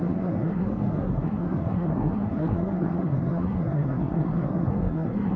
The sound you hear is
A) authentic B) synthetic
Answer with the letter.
B